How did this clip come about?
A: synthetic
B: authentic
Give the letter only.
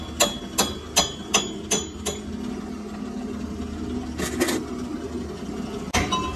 B